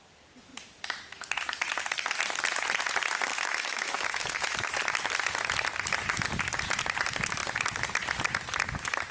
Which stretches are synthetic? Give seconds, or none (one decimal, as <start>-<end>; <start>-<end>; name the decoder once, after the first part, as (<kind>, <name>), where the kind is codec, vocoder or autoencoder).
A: 3.3-4.7 (autoencoder, DAC-VAE)